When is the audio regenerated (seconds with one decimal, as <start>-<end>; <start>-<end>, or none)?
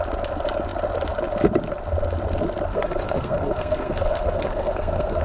2.7-5.2